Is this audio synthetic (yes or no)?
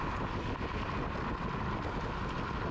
no